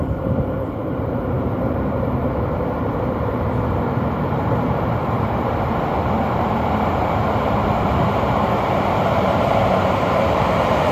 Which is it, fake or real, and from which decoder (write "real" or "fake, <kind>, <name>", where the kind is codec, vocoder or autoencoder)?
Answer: fake, vocoder, BigVGAN v2